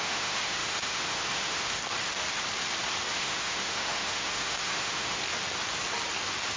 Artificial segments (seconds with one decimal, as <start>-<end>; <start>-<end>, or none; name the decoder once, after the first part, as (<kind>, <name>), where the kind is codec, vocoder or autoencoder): 0.0-1.8 (autoencoder, DAC-VAE); 3.1-5.2